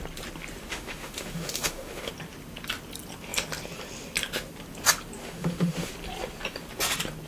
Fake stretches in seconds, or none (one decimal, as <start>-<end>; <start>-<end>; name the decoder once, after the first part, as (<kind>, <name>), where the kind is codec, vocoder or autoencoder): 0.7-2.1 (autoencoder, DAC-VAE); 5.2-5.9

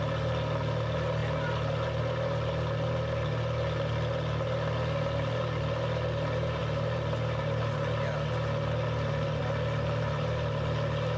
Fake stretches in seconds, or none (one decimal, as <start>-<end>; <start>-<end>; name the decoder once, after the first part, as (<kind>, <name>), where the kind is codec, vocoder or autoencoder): none

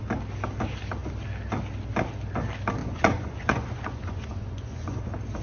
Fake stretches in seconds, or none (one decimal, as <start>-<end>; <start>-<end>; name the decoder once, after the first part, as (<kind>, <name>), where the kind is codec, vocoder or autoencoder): 2.8-5.0 (vocoder, Vocos)